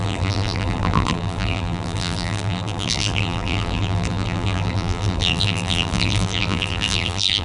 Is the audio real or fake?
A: fake